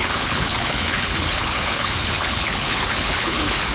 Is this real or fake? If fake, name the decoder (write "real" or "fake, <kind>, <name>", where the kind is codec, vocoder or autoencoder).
fake, codec, HILCodec